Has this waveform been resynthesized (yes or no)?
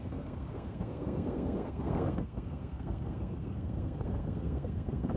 yes